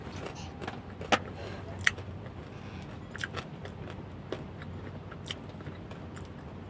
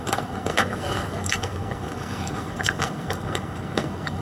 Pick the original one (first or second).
first